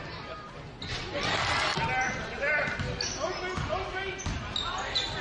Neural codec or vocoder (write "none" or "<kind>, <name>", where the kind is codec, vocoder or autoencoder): none